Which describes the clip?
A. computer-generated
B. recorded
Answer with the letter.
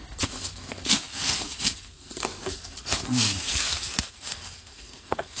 A